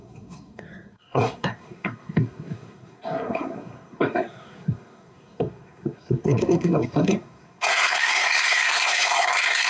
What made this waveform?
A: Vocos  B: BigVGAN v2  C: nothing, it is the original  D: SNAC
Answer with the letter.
D